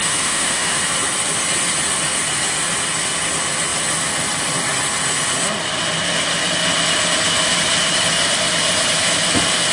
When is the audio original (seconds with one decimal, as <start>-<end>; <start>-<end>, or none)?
0.8-9.7